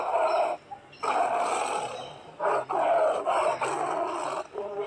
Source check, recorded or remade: recorded